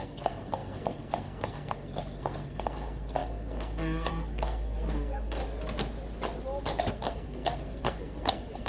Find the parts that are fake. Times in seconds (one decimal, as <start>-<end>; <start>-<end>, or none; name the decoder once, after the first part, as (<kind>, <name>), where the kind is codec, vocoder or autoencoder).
0.0-5.4 (codec, SNAC); 6.9-8.7